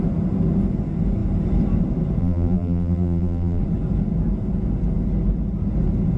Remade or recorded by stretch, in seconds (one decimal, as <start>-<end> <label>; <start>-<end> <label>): 0.0-2.2 recorded; 2.2-3.6 remade; 3.6-6.2 recorded